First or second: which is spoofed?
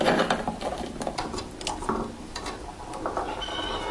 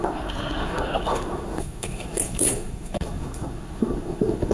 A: second